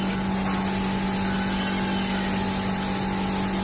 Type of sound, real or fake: real